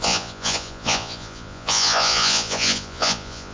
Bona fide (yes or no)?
no